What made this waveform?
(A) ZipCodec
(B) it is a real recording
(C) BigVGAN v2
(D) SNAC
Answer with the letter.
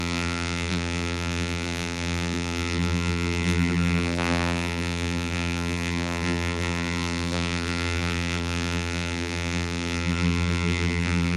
C